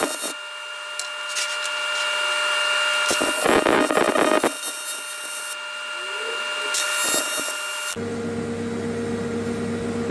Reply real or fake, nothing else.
real